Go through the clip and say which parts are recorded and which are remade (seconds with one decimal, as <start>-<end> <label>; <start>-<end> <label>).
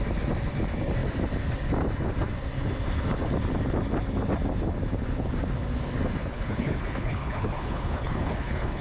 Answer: 0.0-6.2 recorded; 6.2-8.8 remade